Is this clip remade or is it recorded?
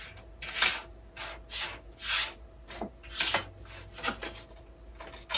recorded